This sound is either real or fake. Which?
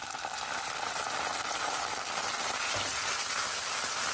real